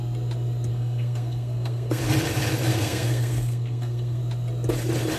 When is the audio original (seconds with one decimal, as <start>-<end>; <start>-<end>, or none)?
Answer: 0.0-0.7; 2.0-2.7; 4.2-5.2